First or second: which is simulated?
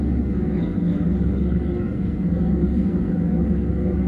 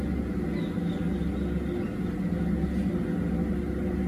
first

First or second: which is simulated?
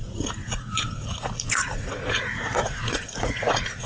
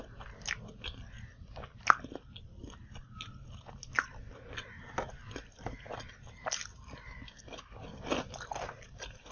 first